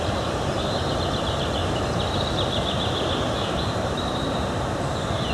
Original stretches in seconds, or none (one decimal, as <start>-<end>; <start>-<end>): 1.6-3.1